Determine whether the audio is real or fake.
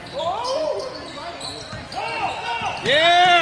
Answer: real